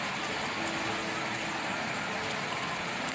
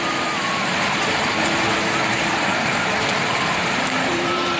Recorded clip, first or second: first